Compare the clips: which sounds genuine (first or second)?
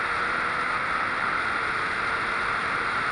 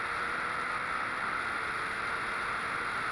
second